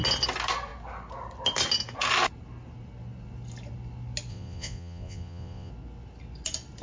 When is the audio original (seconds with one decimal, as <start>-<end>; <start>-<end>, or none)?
0.0-4.3; 5.7-6.8

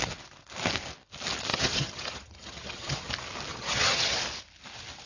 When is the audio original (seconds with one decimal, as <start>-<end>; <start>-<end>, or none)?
0.0-1.5; 3.1-3.5; 4.2-5.1

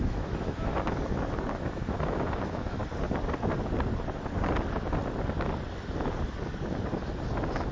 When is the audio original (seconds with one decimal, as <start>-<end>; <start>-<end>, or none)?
0.7-1.6; 2.8-7.7

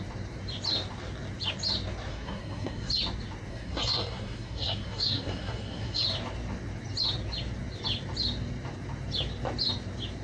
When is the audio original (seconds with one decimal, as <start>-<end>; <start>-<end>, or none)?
0.0-2.1; 2.9-3.5; 6.0-10.2